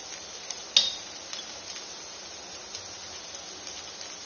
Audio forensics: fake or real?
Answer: real